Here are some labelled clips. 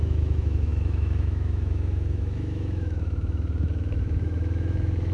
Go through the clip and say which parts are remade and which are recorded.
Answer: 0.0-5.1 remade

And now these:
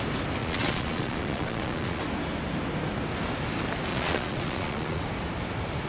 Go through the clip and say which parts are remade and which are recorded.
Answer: 0.0-0.4 recorded; 0.4-2.0 remade; 2.0-3.9 recorded; 3.9-5.0 remade; 5.0-5.9 recorded

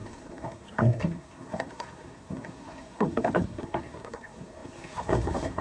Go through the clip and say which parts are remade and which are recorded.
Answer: 0.0-5.6 remade

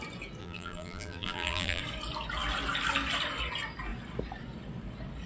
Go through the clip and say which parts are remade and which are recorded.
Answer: 0.0-0.4 recorded; 0.4-1.8 remade; 1.8-5.3 recorded

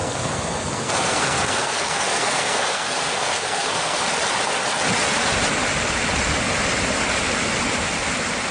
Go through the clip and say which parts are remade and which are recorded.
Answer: 0.0-4.0 remade; 4.0-8.5 recorded

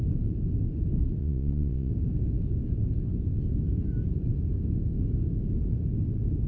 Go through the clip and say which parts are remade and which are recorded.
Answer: 0.0-1.2 recorded; 1.2-1.9 remade; 1.9-6.5 recorded

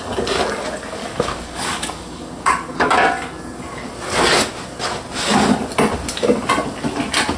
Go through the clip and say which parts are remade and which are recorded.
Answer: 0.0-1.0 recorded; 1.0-2.9 remade; 2.9-7.4 recorded